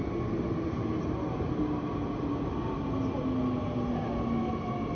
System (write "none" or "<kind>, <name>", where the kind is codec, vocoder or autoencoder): none